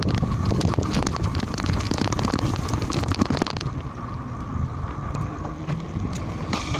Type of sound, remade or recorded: recorded